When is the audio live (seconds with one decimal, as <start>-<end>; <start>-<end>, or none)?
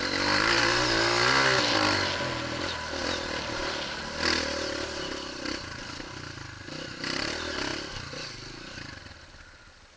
0.0-3.0; 4.0-7.7; 9.2-10.0